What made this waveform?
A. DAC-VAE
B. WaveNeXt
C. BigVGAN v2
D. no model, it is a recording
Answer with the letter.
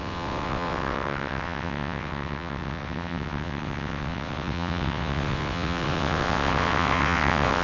B